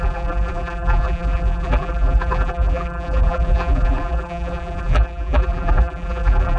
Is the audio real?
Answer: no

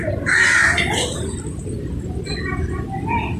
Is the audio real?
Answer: yes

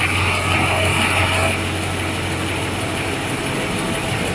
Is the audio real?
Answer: yes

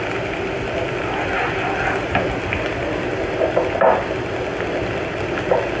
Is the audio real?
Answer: yes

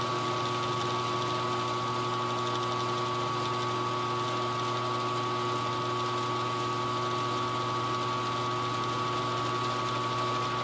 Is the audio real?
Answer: yes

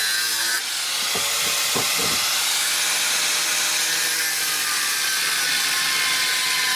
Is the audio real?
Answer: yes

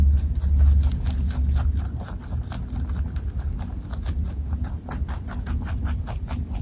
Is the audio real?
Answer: yes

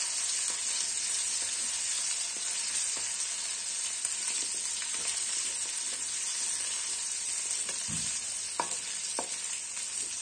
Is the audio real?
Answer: yes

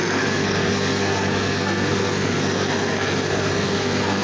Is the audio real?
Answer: no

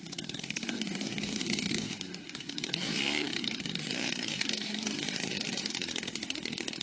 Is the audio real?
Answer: no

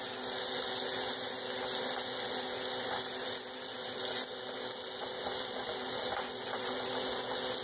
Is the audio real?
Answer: yes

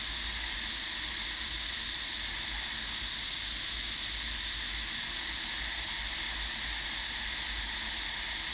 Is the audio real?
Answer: yes